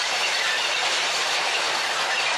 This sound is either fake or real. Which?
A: fake